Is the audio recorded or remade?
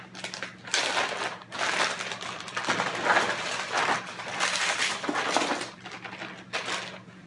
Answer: recorded